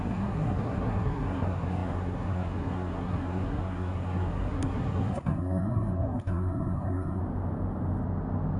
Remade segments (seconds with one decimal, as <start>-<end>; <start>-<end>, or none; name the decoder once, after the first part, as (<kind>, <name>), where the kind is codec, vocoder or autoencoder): 0.0-7.2 (codec, SNAC)